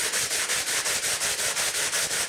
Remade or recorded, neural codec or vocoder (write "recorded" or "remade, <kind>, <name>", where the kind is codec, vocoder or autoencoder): recorded